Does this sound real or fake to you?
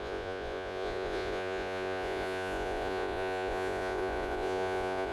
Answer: fake